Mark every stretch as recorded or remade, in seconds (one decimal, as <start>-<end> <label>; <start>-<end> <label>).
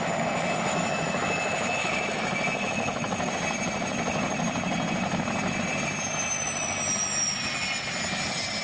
0.0-0.7 recorded; 0.7-3.3 remade; 3.3-8.6 recorded